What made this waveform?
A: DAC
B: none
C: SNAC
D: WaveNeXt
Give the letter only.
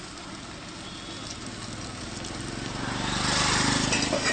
B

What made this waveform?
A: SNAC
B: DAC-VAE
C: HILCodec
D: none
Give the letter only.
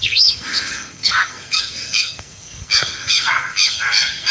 A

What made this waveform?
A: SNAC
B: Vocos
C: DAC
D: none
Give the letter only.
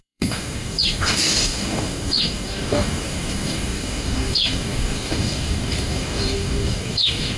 C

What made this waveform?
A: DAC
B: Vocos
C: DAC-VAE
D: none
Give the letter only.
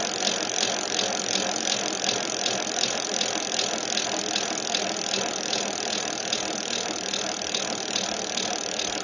D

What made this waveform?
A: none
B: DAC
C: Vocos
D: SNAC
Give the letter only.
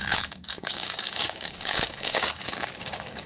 B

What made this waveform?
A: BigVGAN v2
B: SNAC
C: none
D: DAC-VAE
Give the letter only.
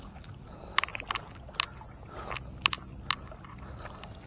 C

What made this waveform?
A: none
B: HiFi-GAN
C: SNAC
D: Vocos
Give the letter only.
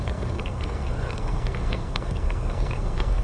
C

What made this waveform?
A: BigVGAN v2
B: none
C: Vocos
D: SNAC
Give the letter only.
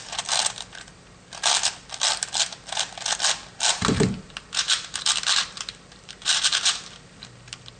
B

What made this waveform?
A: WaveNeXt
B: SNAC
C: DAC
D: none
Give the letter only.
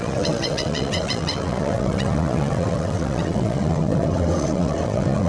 A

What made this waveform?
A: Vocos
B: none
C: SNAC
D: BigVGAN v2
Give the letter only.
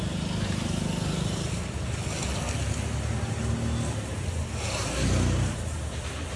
B